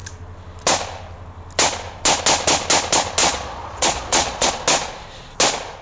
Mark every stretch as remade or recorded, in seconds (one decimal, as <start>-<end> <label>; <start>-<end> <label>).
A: 0.0-3.2 recorded; 3.2-4.5 remade; 4.5-5.8 recorded